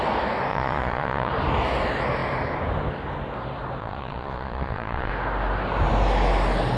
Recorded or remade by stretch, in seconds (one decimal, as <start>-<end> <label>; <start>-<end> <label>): 0.0-0.5 recorded; 0.5-1.3 remade; 1.3-3.8 recorded; 3.8-5.1 remade; 5.1-6.8 recorded